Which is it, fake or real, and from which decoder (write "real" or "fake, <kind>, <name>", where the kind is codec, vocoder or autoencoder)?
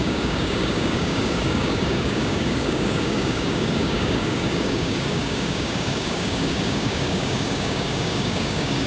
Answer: fake, codec, DAC